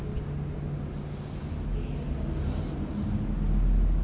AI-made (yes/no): no